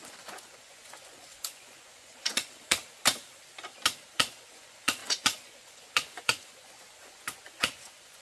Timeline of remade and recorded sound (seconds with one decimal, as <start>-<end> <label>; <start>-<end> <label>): 0.0-2.8 remade; 2.8-4.1 recorded; 4.1-8.2 remade

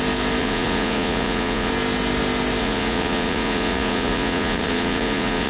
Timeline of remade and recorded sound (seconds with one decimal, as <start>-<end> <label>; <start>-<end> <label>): 0.0-0.4 recorded; 0.4-1.7 remade; 1.7-2.6 recorded; 2.6-5.5 remade

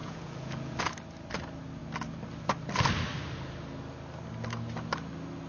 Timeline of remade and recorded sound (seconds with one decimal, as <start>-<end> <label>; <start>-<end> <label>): 0.0-0.8 remade; 0.8-5.5 recorded

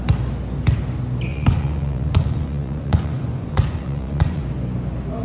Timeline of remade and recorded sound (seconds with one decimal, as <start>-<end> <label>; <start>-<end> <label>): 0.0-1.3 recorded; 1.3-4.4 remade; 4.4-5.2 recorded

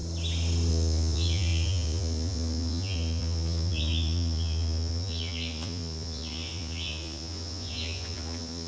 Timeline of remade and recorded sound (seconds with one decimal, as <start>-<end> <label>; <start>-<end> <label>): 0.0-0.7 recorded; 0.7-8.7 remade

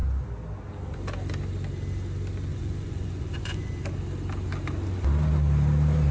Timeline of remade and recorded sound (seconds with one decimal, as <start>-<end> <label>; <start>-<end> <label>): 0.0-2.5 recorded; 2.5-3.7 remade; 3.7-6.1 recorded

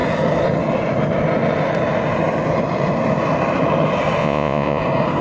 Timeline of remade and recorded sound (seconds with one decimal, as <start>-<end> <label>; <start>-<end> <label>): 0.0-4.2 recorded; 4.2-4.8 remade; 4.8-5.2 recorded

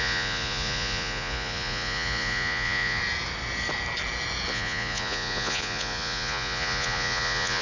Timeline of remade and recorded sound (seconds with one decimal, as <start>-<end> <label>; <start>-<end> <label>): 0.0-3.0 remade; 3.0-4.5 recorded; 4.5-7.6 remade